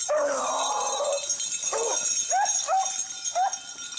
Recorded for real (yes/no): yes